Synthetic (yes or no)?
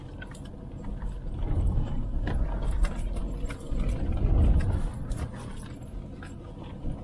no